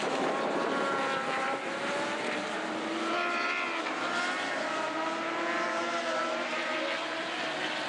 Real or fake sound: fake